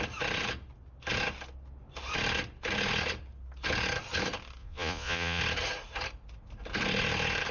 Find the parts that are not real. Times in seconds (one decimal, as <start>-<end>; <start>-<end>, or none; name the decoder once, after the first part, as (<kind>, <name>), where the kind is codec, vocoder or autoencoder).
4.6-5.4 (vocoder, Vocos)

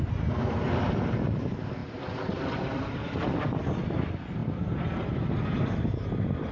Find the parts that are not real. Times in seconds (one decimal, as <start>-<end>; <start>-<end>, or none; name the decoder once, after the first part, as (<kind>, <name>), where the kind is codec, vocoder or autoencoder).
none